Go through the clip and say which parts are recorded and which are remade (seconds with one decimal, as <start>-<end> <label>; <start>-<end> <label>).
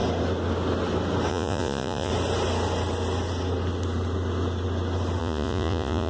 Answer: 0.0-1.3 recorded; 1.3-2.1 remade; 2.1-5.2 recorded; 5.2-6.1 remade